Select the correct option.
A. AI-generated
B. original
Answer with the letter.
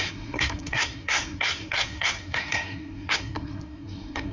A